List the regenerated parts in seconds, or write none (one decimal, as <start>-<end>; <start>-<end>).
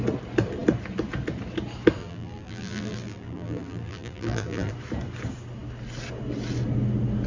2.0-4.7